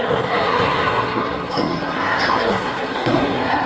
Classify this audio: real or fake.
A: fake